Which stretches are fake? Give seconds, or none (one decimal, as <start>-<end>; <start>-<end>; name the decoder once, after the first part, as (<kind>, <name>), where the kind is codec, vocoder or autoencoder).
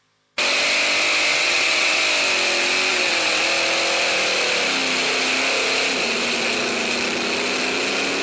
1.3-2.0 (vocoder, WaveNeXt); 2.9-3.4